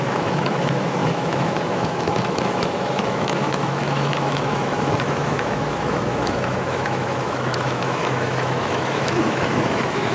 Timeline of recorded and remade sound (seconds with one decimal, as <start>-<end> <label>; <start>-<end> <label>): 0.0-10.1 remade